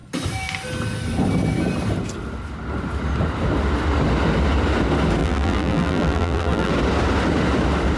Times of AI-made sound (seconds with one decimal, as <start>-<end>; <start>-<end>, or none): 5.2-6.7